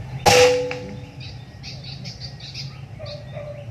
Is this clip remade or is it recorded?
recorded